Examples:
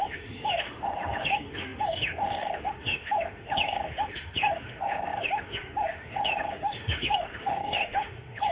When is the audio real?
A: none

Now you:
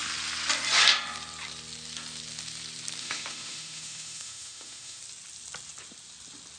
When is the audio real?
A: 0.0-3.0; 5.0-6.6

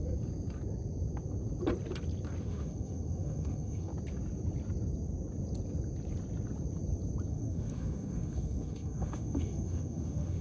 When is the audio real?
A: 0.0-2.4; 3.9-7.3

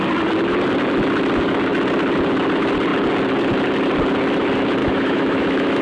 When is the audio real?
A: 0.0-4.8

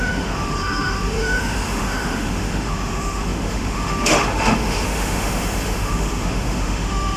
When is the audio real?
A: none